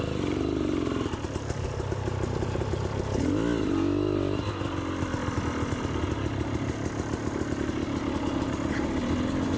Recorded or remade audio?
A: recorded